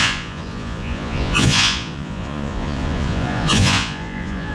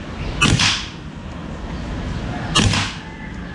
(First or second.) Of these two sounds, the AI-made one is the first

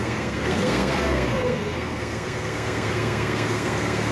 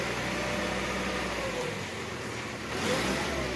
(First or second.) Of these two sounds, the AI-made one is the first